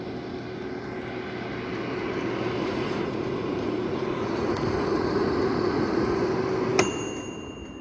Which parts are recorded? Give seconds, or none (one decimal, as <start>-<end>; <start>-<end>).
0.0-2.6; 6.3-7.8